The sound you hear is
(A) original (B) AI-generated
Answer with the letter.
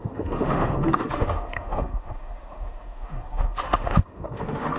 B